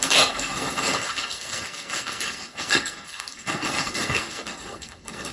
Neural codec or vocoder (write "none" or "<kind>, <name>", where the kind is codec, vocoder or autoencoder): codec, SNAC